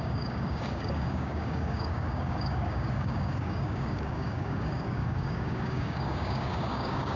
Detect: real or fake fake